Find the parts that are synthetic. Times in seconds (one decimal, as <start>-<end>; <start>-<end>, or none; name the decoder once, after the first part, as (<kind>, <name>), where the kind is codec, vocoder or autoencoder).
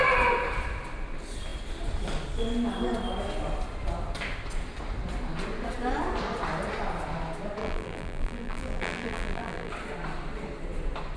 7.6-9.7 (vocoder, BigVGAN v2)